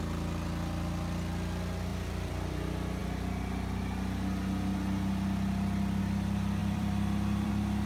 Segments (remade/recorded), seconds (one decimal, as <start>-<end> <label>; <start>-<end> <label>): 0.0-1.9 recorded; 1.9-2.5 remade; 2.5-6.6 recorded; 6.6-7.5 remade; 7.5-7.9 recorded